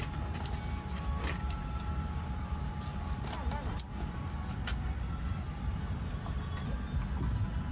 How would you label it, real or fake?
real